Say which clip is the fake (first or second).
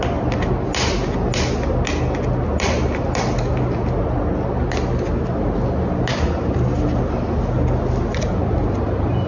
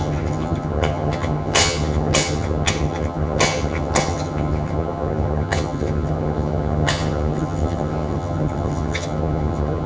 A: second